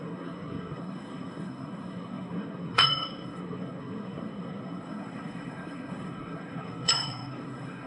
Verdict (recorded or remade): remade